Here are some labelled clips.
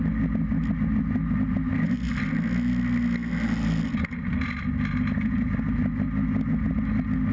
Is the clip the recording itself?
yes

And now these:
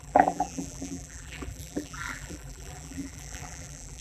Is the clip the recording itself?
no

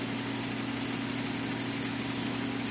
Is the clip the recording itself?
yes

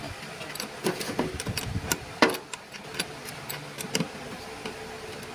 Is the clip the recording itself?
yes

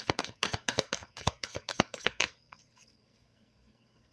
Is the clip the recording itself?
no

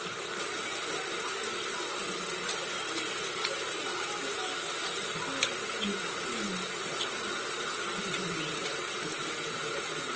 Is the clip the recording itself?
yes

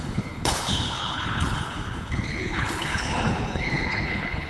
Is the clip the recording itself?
no